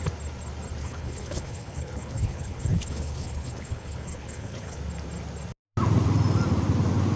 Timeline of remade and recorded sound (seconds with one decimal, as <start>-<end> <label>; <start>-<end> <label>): 0.0-0.8 recorded; 0.8-4.8 remade; 4.8-7.2 recorded